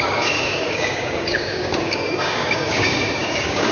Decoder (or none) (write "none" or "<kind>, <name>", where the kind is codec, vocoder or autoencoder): codec, DAC